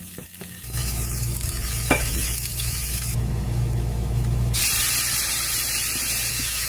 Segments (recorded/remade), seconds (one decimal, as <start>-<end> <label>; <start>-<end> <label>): 0.0-4.6 remade; 4.6-6.3 recorded; 6.3-6.7 remade